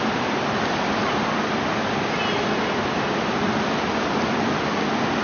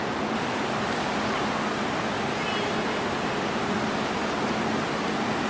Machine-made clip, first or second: first